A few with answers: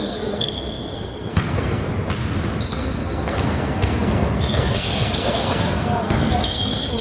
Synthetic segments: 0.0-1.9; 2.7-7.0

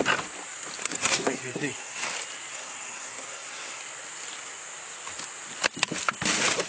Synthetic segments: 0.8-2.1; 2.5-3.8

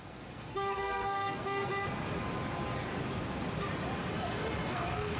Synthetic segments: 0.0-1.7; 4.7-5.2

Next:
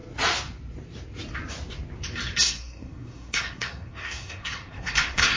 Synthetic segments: 2.4-5.4

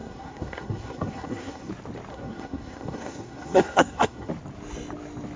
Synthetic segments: 0.0-1.7; 2.1-4.3

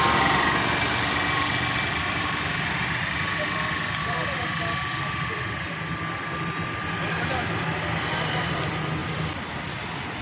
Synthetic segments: none